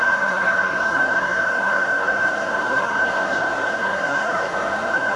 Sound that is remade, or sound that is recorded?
remade